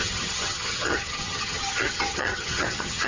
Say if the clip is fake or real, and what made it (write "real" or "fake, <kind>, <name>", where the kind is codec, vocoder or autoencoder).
fake, vocoder, HiFi-GAN